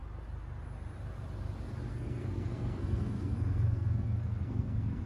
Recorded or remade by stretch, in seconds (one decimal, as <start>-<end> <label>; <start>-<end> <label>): 0.0-1.9 recorded; 1.9-5.1 remade